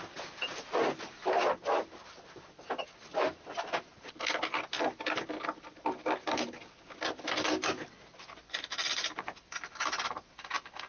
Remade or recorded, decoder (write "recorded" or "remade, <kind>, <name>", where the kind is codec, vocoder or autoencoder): recorded